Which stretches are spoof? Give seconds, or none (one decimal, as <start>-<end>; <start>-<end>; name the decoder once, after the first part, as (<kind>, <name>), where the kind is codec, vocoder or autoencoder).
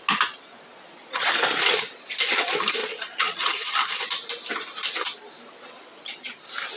0.7-1.3 (vocoder, Vocos); 2.8-3.5